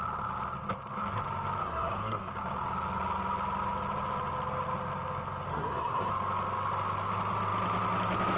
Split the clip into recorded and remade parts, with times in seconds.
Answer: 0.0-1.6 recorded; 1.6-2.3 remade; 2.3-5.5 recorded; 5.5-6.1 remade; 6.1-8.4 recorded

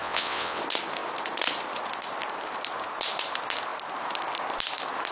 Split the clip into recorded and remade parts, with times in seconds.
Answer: 0.0-0.6 remade; 0.6-5.1 recorded